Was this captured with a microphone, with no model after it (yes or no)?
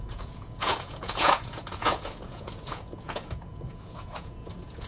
no